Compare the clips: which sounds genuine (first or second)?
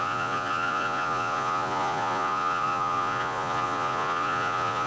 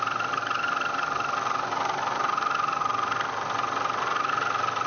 second